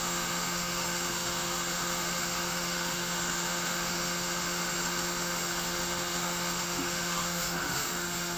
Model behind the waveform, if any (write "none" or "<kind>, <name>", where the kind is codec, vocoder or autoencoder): autoencoder, DAC-VAE